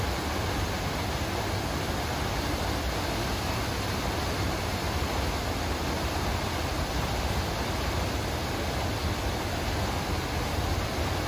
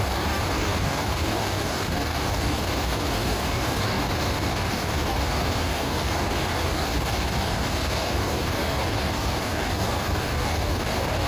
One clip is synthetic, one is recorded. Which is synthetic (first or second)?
second